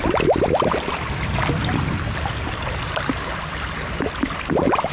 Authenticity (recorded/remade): recorded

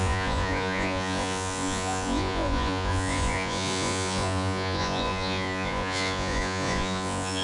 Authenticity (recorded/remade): remade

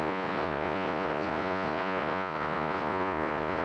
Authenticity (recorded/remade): remade